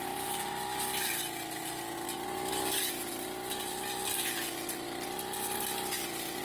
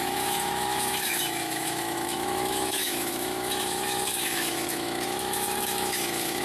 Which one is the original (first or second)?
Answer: first